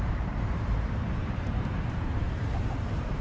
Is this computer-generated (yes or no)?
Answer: yes